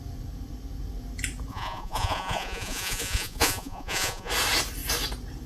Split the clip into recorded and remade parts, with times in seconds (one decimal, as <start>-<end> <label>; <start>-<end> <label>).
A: 0.0-1.5 recorded; 1.5-4.3 remade; 4.3-5.5 recorded